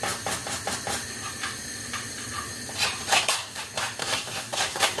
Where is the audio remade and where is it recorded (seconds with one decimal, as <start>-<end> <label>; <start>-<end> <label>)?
0.0-3.1 recorded; 3.1-3.6 remade; 3.6-4.0 recorded; 4.0-5.0 remade